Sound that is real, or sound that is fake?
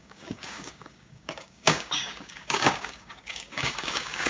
fake